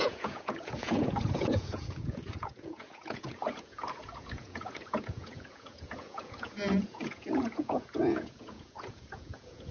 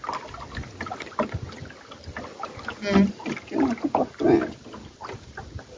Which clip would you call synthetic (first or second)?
first